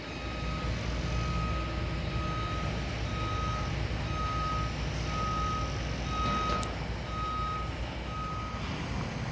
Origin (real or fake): real